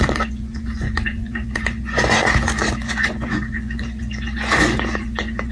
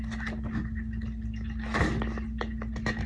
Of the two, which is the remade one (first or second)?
first